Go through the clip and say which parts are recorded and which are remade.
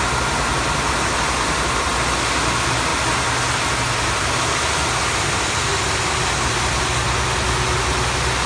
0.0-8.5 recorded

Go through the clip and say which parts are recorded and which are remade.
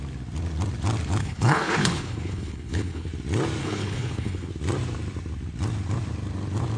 0.0-1.2 recorded; 1.2-3.1 remade; 3.1-3.6 recorded; 3.6-4.5 remade; 4.5-6.8 recorded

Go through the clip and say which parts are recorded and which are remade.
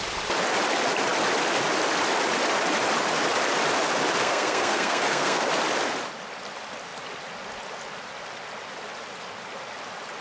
0.0-4.2 recorded; 4.2-5.5 remade; 5.5-10.2 recorded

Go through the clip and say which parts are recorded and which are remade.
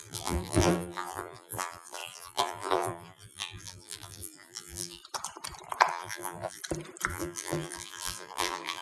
0.0-5.0 remade; 5.0-5.9 recorded; 5.9-6.6 remade; 6.6-7.1 recorded; 7.1-8.8 remade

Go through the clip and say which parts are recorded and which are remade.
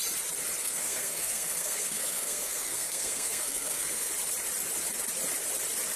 0.0-0.6 recorded; 0.6-4.1 remade; 4.1-6.0 recorded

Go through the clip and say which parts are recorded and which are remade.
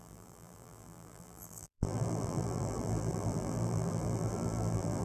0.0-5.0 remade